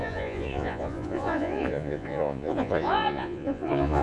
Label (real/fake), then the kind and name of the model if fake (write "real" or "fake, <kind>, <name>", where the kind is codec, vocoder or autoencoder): fake, vocoder, Vocos